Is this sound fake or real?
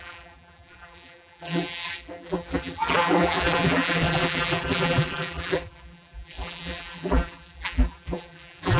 fake